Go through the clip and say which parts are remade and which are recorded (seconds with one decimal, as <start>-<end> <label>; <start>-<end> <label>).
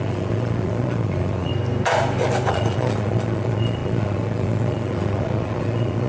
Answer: 0.0-1.5 remade; 1.5-2.5 recorded; 2.5-6.1 remade